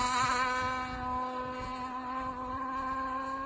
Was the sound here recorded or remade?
recorded